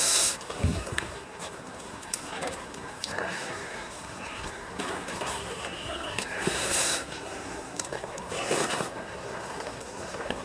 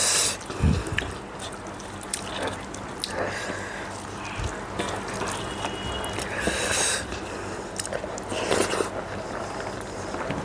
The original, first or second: second